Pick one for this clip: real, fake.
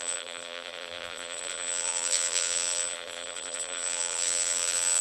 fake